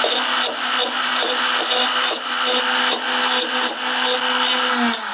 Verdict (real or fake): real